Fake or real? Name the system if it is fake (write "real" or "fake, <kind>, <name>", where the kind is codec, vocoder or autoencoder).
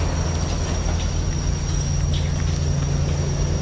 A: real